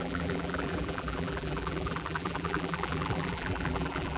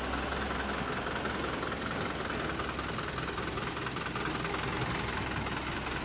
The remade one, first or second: first